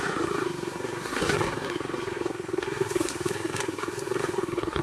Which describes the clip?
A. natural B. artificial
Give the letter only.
B